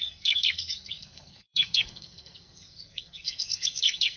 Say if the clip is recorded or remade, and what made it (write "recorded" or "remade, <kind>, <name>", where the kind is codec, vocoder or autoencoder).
remade, codec, SNAC